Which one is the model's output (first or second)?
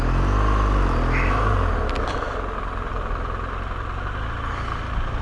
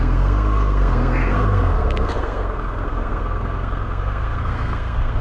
second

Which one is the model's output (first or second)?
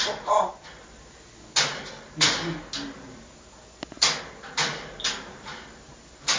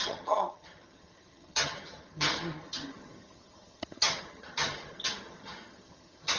second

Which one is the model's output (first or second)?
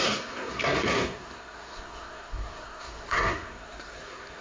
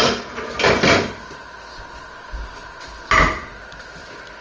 first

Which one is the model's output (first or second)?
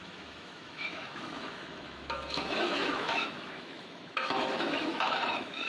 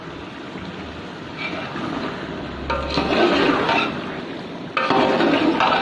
first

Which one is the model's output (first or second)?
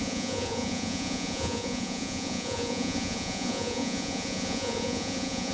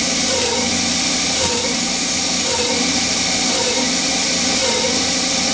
first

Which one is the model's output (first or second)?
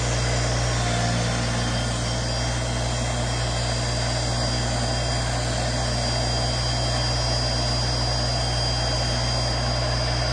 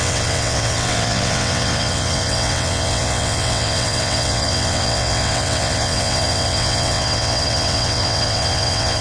second